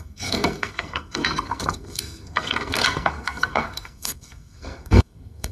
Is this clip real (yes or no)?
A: no